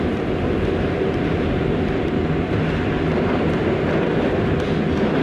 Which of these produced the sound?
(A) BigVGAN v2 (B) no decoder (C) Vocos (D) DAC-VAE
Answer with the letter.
B